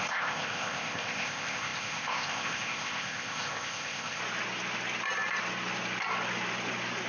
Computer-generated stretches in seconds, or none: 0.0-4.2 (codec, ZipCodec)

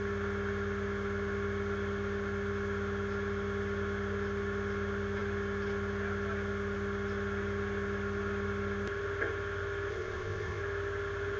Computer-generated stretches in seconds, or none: 9.9-10.6 (codec, ZipCodec)

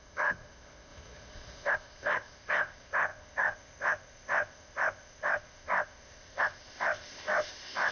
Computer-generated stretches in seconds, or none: 0.0-7.9 (codec, ZipCodec)

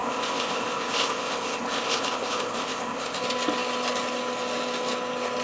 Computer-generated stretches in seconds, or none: 0.0-3.2 (codec, ZipCodec)

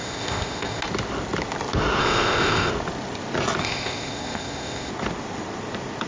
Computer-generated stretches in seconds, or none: 0.0-0.8 (codec, ZipCodec); 2.0-2.7; 3.6-4.9

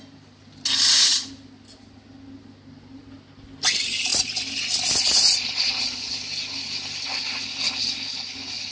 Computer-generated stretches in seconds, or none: none

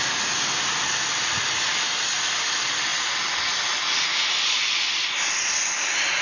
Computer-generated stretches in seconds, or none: none